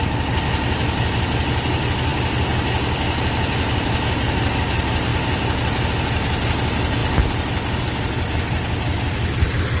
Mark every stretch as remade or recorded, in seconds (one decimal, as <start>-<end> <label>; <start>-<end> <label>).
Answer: 0.0-9.8 recorded